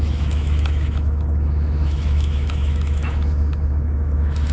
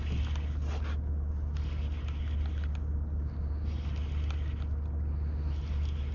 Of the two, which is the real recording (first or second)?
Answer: second